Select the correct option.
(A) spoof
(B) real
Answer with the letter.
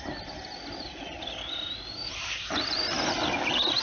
B